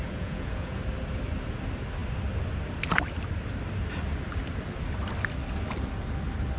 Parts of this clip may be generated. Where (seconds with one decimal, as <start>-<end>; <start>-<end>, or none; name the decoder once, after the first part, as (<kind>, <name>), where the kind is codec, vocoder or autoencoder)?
0.0-0.8 (vocoder, Vocos)